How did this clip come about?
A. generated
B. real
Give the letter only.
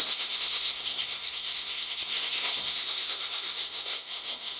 A